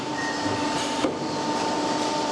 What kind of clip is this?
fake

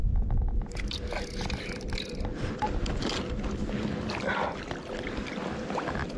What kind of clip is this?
real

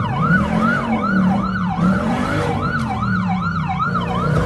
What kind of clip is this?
fake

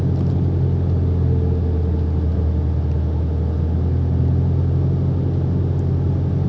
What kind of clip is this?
real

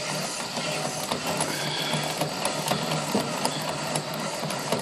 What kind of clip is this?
real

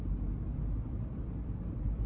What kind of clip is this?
fake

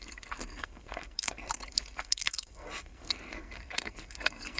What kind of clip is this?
fake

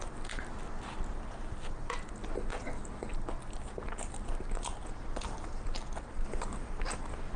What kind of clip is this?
real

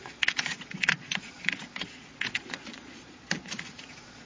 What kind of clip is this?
fake